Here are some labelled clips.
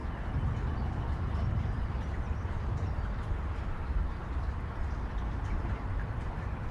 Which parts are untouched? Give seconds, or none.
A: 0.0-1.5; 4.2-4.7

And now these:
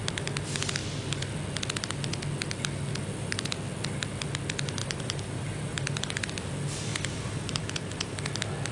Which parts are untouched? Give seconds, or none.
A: 0.0-4.8; 6.3-6.9; 8.2-8.7

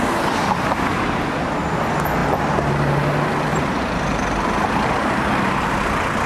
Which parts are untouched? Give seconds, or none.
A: 0.0-3.5; 5.7-6.3

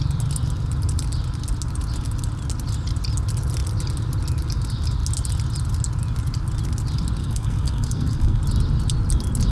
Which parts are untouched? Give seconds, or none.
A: 0.0-7.2; 8.4-9.5

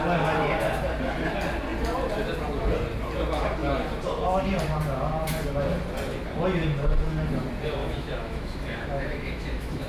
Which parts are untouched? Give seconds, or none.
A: 0.0-7.8

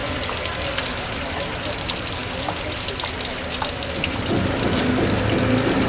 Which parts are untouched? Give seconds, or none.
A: 0.0-5.9

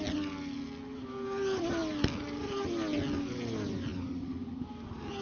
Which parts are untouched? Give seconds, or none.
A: 0.0-5.2

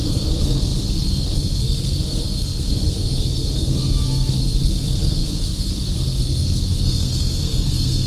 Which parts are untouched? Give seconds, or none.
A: none